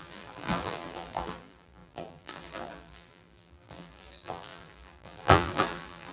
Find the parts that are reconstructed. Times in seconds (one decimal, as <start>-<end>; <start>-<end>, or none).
0.0-6.1